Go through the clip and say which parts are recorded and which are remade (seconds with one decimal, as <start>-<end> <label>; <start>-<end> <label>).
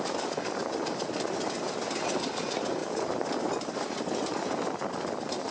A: 0.0-5.5 recorded